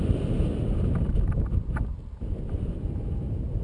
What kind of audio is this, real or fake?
real